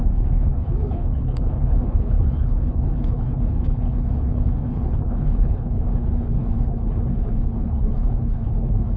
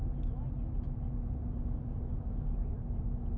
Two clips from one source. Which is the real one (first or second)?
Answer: second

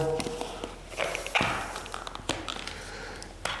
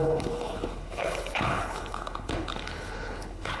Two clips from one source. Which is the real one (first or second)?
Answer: first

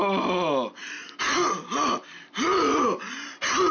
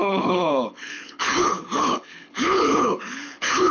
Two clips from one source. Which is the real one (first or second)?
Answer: first